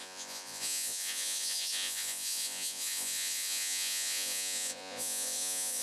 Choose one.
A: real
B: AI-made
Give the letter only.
B